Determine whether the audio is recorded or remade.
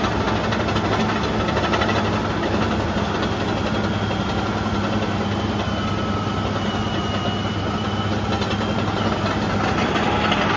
recorded